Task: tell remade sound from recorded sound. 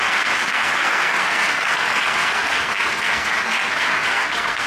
remade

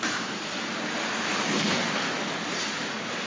recorded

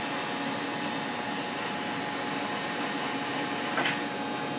recorded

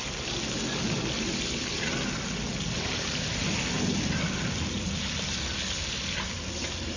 recorded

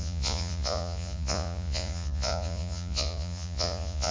remade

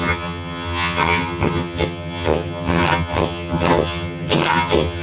remade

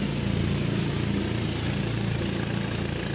recorded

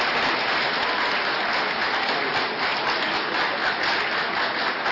recorded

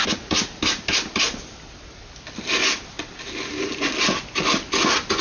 recorded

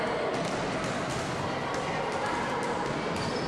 recorded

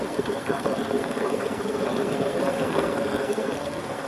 remade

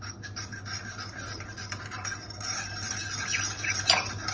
recorded